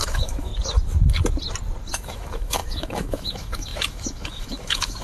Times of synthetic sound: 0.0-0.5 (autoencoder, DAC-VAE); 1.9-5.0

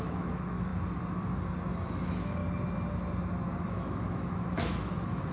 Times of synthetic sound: 0.0-0.7 (autoencoder, DAC-VAE); 1.9-2.4; 3.6-5.3

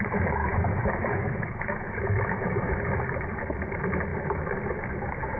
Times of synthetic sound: 0.4-2.7 (autoencoder, DAC-VAE)

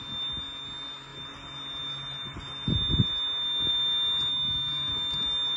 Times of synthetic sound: 4.3-4.9 (autoencoder, DAC-VAE)